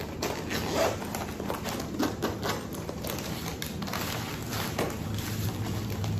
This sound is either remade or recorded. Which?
recorded